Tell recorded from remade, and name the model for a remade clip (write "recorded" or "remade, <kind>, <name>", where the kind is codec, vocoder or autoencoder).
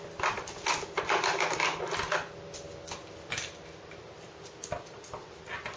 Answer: recorded